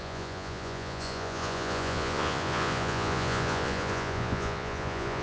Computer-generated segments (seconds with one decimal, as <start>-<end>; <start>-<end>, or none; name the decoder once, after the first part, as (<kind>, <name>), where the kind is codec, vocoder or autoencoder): 0.0-5.2 (vocoder, Vocos)